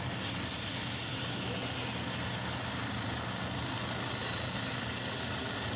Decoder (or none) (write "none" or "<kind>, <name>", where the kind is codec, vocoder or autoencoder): none